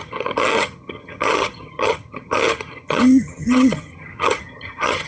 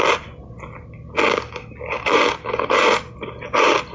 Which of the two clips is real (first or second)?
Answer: second